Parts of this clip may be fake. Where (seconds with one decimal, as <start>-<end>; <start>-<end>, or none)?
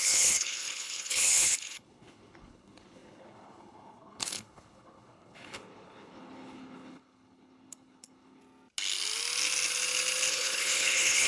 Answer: 0.0-8.4; 10.3-11.3